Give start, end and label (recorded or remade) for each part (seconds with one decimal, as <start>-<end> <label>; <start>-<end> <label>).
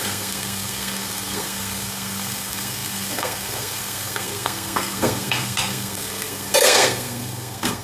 0.0-7.8 remade